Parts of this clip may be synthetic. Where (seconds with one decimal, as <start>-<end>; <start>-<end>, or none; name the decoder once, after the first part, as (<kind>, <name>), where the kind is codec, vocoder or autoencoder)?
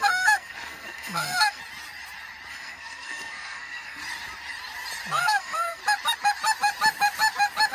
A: 0.0-1.6 (codec, SNAC); 2.5-4.0; 5.2-5.8